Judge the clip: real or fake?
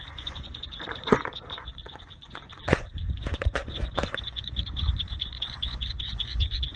fake